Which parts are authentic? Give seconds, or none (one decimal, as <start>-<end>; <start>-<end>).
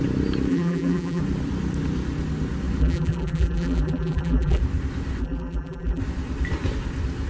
0.0-0.5; 1.2-2.8; 4.6-5.2; 6.0-7.3